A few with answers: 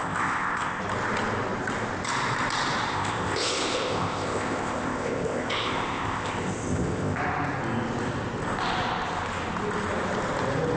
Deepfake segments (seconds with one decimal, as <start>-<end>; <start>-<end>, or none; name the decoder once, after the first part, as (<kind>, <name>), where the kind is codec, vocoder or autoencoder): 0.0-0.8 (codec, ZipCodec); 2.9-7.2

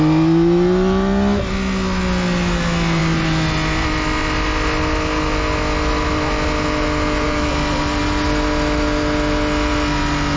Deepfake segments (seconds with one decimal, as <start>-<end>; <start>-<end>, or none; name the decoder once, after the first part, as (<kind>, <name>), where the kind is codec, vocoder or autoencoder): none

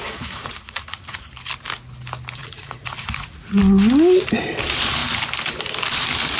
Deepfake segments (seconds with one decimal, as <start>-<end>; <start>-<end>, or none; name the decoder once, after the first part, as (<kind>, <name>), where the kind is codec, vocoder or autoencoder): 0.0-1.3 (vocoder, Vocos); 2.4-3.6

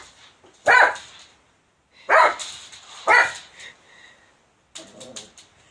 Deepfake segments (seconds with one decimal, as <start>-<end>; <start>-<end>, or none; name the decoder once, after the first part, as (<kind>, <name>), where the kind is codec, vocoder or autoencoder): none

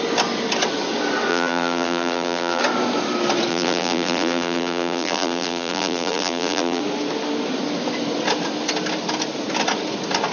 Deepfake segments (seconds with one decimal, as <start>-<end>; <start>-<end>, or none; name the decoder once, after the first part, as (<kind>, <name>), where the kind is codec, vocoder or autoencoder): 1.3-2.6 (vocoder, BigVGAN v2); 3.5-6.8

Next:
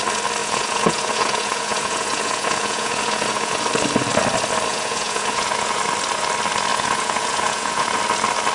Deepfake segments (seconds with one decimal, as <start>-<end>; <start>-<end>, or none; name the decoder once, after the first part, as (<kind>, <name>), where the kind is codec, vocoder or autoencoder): 0.4-3.6 (vocoder, Vocos); 4.7-5.8; 6.7-8.0